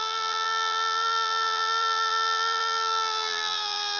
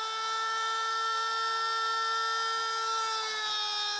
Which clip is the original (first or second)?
second